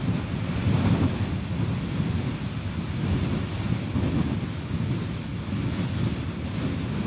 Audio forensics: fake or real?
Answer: real